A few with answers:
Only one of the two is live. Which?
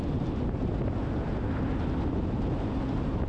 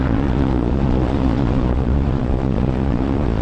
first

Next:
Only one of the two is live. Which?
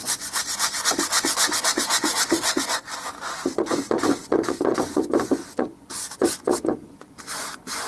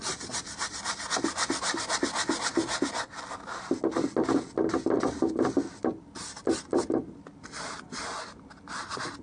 second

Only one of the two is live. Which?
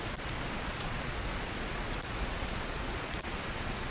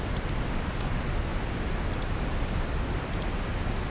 second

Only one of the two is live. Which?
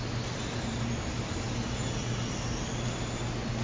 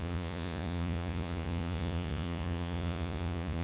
first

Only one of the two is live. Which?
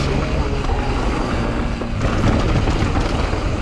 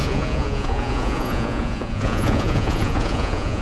first